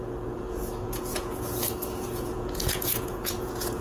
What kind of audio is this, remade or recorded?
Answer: remade